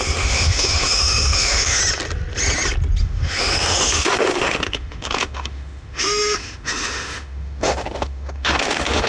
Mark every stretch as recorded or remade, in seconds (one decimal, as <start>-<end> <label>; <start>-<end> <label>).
0.0-1.8 remade; 1.8-3.0 recorded; 3.0-9.1 remade